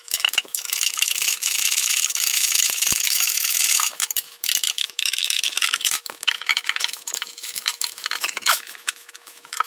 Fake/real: fake